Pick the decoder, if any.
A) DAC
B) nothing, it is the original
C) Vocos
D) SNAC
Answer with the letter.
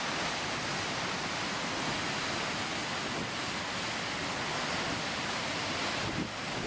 B